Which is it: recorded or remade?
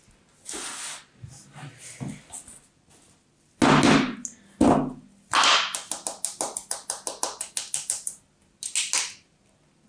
recorded